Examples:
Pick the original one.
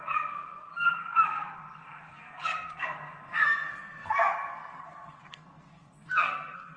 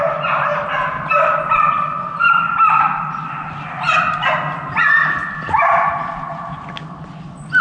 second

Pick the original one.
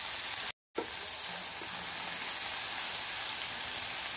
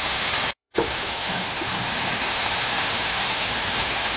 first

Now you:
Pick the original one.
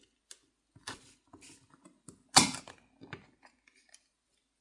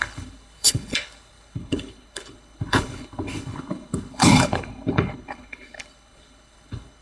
first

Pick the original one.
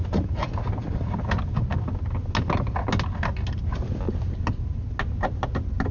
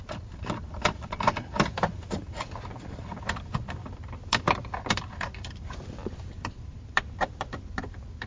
first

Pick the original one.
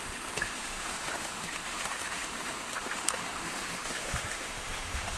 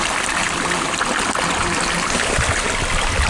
second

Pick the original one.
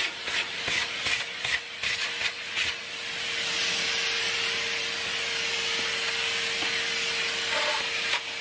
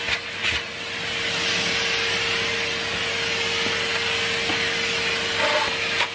second